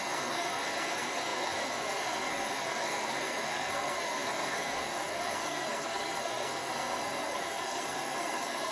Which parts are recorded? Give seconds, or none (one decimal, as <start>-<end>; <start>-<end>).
none